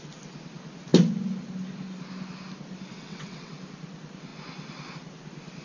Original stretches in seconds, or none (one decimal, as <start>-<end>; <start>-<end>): 0.0-2.9; 3.5-5.6